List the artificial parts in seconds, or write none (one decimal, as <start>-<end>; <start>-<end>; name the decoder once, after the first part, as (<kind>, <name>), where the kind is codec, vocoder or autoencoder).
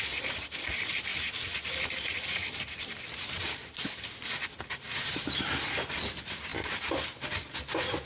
0.0-1.1 (vocoder, BigVGAN v2); 1.9-6.5; 7.2-8.1